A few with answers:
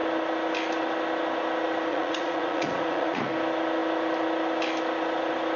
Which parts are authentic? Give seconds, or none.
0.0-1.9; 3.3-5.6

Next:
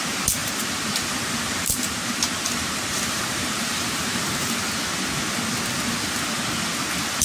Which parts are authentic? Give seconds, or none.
0.0-0.4; 4.7-7.2

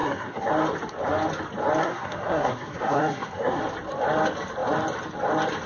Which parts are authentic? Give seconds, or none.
0.5-1.8; 3.6-5.7

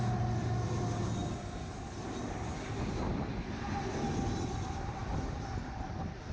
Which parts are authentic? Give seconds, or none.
0.0-6.3

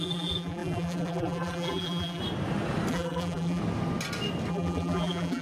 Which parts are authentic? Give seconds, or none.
2.2-2.9; 3.6-4.5

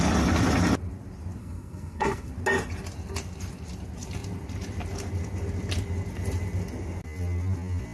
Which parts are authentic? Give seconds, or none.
0.0-1.4; 2.3-7.9

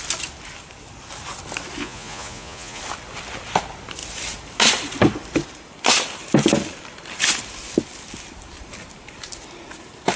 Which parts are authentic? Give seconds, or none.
0.0-1.8; 2.8-10.2

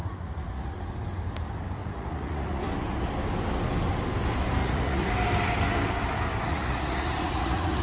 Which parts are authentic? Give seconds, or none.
0.8-1.8; 2.6-4.6; 5.1-6.5